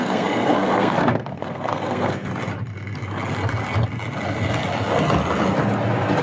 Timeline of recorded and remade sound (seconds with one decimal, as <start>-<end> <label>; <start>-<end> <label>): 0.0-2.3 remade; 2.3-6.2 recorded